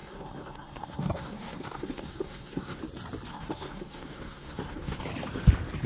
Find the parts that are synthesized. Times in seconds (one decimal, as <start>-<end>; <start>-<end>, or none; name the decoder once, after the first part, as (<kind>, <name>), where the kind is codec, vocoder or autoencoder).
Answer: 0.0-2.8 (codec, SNAC); 3.3-5.0